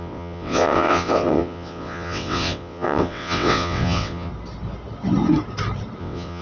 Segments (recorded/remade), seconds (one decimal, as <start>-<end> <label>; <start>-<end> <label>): 0.0-4.3 remade; 4.3-6.0 recorded; 6.0-6.4 remade